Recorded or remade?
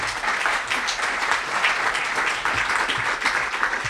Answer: recorded